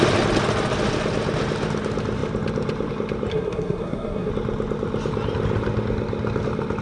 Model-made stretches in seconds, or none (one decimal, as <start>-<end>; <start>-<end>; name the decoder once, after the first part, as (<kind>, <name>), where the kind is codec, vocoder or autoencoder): 3.3-4.3 (codec, SNAC)